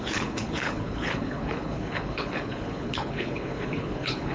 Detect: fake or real fake